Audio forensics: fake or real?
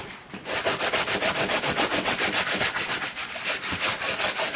real